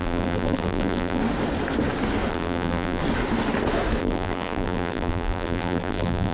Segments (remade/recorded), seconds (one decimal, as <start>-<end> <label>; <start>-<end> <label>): 0.0-1.2 remade; 1.2-2.3 recorded; 2.3-3.0 remade; 3.0-4.0 recorded; 4.0-6.3 remade